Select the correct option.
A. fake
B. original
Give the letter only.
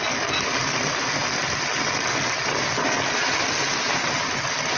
B